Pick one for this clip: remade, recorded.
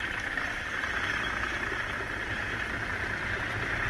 remade